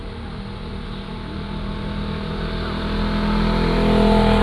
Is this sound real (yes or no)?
yes